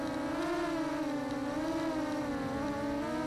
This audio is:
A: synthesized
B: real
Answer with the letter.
B